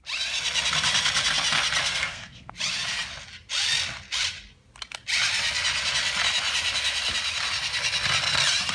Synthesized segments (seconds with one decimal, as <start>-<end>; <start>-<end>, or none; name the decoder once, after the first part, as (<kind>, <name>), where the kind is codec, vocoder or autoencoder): 1.8-2.5 (codec, SNAC)